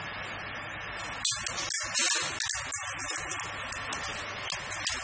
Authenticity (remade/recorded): recorded